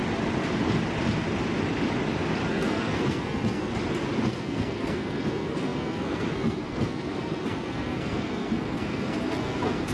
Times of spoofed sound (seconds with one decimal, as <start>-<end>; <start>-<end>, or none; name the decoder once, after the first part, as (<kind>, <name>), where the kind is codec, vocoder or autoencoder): 2.5-3.7 (codec, SNAC); 4.3-9.9